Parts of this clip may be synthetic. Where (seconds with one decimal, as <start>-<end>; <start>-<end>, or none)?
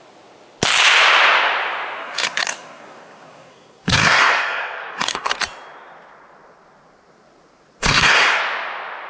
2.0-5.3; 7.8-8.4